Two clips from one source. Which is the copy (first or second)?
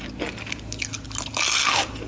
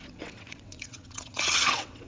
second